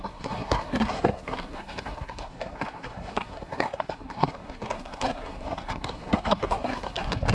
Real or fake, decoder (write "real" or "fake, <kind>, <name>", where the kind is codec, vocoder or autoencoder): fake, codec, SNAC